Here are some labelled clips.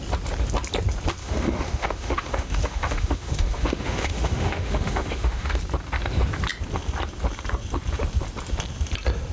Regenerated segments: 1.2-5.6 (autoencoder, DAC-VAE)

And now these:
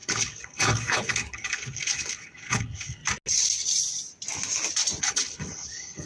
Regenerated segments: 0.0-3.0 (codec, HILCodec); 5.0-6.1

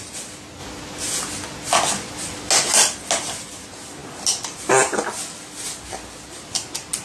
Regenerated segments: none

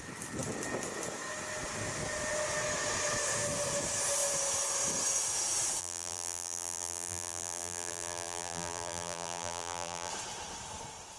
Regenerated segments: 5.8-10.1 (vocoder, BigVGAN v2)

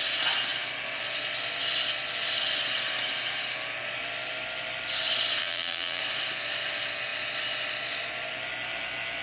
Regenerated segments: 5.4-6.0 (vocoder, BigVGAN v2)